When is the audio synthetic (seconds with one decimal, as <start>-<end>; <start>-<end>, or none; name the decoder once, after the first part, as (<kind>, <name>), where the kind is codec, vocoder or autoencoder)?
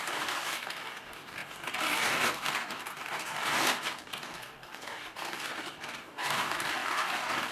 0.0-7.5 (codec, DAC)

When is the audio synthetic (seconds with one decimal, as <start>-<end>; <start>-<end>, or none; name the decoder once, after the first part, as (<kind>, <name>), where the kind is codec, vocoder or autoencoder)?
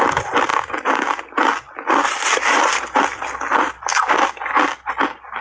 none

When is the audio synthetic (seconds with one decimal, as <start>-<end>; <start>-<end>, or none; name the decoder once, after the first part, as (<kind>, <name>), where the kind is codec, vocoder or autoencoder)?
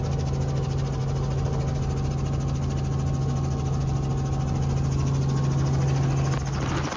none